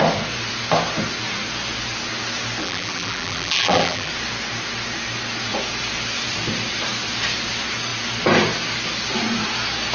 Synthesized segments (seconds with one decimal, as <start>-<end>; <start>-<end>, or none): 2.6-4.1